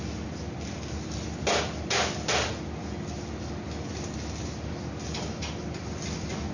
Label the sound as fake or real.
real